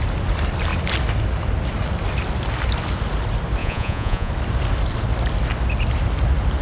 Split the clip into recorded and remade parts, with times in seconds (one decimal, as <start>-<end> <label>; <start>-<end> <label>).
0.0-3.6 recorded; 3.6-4.3 remade; 4.3-6.6 recorded